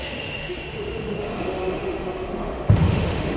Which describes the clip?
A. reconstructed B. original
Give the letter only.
A